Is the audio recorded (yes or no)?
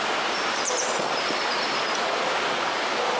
yes